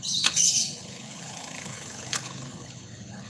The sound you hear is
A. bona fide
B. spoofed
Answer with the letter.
B